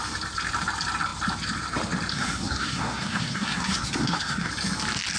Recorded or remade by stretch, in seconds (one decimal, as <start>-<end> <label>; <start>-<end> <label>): 0.0-2.1 recorded; 2.1-4.5 remade; 4.5-5.2 recorded